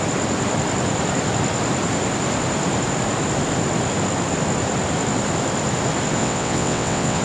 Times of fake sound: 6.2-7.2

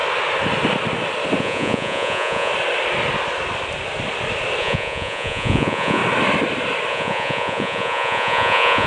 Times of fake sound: 1.4-2.5; 4.6-6.0; 6.9-8.9

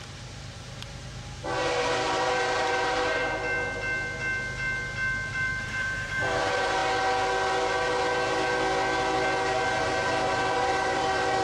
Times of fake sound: 0.0-3.2; 5.3-6.8; 9.8-11.4

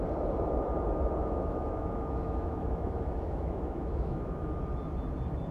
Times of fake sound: 1.2-4.5